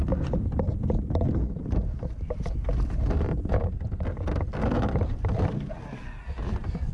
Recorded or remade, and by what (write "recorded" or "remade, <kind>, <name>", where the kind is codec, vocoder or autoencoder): recorded